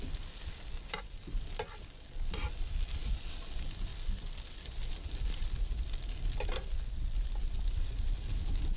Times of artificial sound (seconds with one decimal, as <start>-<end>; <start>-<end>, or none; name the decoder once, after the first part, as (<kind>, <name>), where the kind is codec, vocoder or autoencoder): none